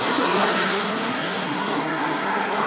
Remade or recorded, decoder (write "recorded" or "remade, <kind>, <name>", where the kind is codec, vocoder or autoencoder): remade, codec, SNAC